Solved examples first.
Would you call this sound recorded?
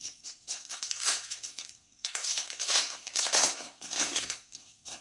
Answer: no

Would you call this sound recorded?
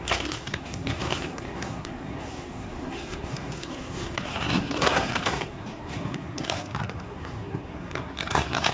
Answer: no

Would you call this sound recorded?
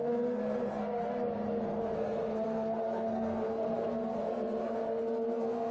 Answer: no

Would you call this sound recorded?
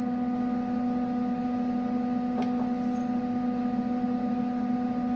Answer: yes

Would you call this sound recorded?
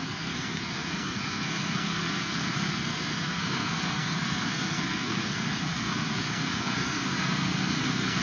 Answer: no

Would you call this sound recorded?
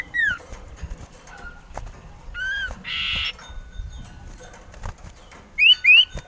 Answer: yes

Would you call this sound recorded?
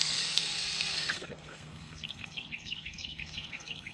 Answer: no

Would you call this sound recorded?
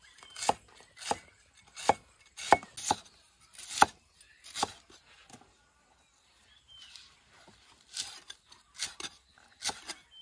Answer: yes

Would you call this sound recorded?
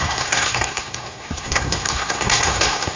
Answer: no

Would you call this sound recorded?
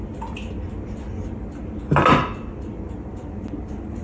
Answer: yes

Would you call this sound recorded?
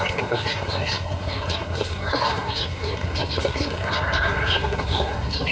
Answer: no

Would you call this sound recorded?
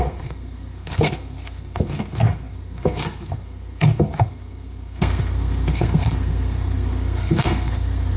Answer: no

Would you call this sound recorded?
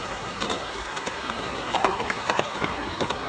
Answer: no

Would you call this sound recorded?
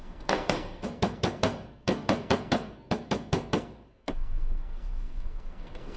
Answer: no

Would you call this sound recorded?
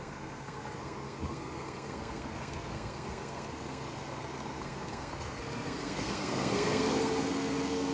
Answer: no